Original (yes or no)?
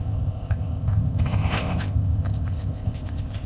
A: no